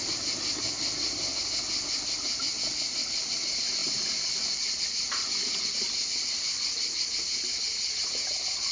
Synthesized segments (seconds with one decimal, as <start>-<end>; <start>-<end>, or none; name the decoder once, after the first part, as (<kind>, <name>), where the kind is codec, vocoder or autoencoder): none